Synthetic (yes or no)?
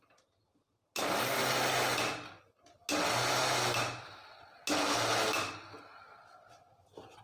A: no